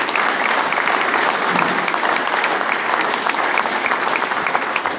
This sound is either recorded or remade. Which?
recorded